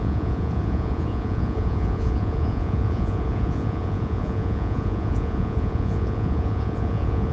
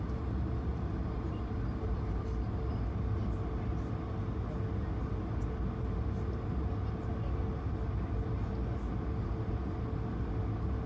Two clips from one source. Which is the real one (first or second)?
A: second